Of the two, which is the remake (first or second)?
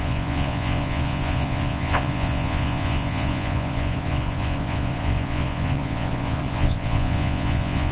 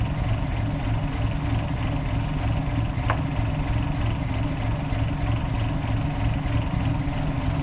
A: first